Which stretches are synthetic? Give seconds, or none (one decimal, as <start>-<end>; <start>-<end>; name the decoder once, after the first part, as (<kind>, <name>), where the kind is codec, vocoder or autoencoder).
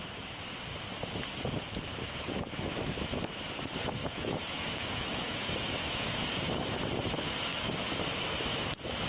1.9-2.5 (autoencoder, DAC-VAE); 4.0-6.8; 7.5-9.1